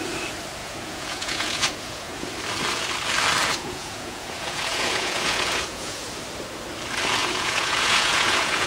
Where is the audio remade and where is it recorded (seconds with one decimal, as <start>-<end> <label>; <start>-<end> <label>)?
0.0-0.6 recorded; 0.6-2.3 remade; 2.3-3.4 recorded; 3.4-6.0 remade; 6.0-7.2 recorded; 7.2-8.7 remade